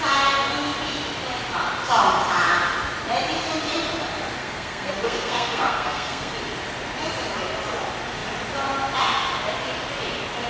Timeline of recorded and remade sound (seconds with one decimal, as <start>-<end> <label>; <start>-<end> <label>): 0.0-4.4 recorded; 4.4-6.3 remade; 6.3-10.5 recorded